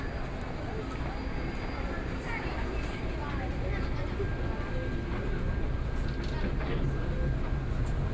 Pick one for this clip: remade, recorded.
recorded